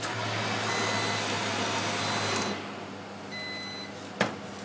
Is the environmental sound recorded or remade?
recorded